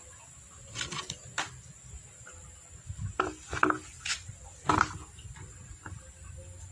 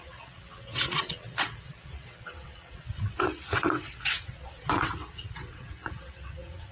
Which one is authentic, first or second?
first